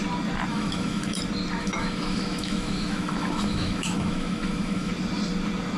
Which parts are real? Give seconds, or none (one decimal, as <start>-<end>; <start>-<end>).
0.0-0.5; 1.2-1.6; 4.9-5.8